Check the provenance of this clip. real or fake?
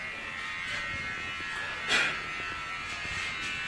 real